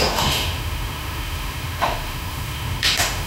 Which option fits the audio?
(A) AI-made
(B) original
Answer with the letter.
A